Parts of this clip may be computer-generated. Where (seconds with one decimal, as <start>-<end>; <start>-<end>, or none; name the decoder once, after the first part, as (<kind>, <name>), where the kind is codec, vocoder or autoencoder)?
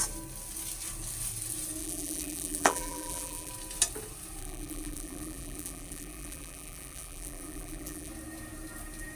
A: 1.8-3.5 (vocoder, BigVGAN v2); 4.4-8.1